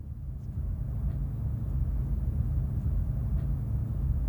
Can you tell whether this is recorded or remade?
recorded